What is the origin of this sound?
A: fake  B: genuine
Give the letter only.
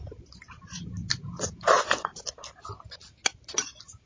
B